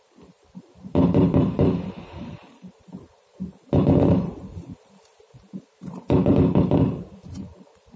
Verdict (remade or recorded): remade